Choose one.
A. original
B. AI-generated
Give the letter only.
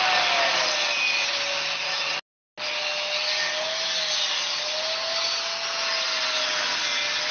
A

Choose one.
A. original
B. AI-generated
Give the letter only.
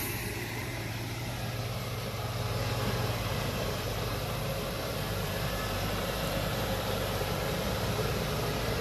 B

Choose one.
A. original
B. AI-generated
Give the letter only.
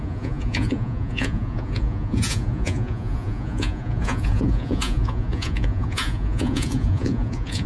B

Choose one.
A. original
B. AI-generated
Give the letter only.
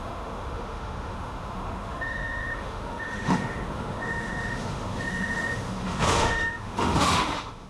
B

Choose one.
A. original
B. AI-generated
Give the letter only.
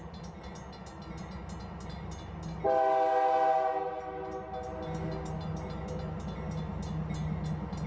A